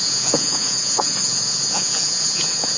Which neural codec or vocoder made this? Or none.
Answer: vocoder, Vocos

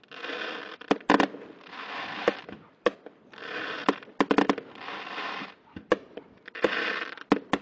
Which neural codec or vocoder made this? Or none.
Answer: none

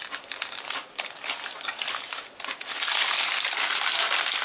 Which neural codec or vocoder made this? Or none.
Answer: none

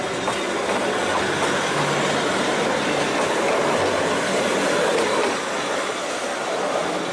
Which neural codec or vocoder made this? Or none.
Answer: none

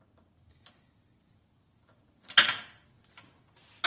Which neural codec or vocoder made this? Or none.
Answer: none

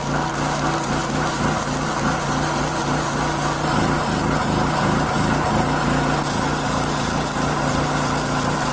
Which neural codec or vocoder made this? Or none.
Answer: none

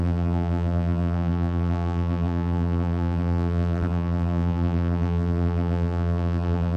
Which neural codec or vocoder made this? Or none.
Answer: vocoder, BigVGAN v2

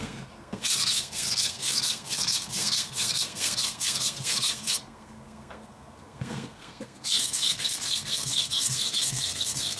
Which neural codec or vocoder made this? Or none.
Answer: codec, SNAC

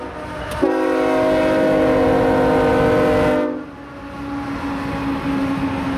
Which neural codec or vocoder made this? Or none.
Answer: none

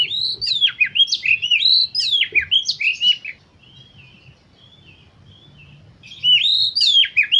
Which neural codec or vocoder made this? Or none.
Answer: none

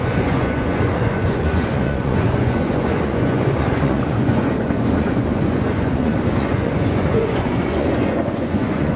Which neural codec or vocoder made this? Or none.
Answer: vocoder, Vocos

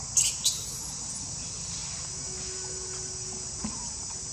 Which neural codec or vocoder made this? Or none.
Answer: none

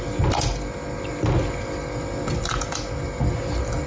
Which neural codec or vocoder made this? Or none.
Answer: none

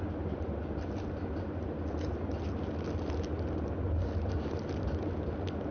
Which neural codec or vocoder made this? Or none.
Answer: none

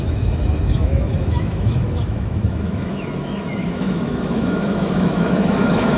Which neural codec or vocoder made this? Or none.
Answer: autoencoder, DAC-VAE